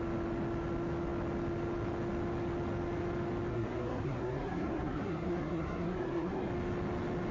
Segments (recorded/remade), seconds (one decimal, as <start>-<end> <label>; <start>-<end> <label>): 0.0-3.5 recorded; 3.5-6.5 remade; 6.5-7.3 recorded